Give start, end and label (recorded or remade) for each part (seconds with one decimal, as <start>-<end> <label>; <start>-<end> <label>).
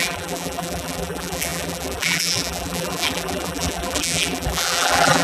0.0-5.2 remade